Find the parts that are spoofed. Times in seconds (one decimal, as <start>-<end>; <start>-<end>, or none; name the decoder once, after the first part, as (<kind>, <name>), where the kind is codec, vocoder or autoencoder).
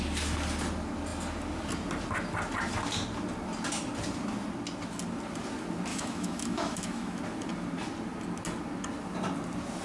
5.9-7.2 (autoencoder, DAC-VAE)